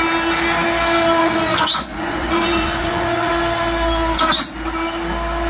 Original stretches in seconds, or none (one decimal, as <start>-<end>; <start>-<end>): 0.0-1.2; 3.3-5.5